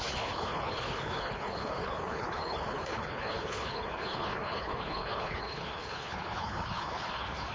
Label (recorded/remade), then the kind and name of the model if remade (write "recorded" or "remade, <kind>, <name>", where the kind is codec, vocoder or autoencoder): remade, codec, HILCodec